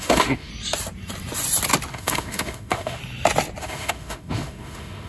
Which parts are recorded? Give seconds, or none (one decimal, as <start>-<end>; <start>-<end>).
0.5-1.9; 3.0-3.6